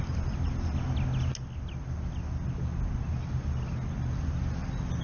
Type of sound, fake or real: real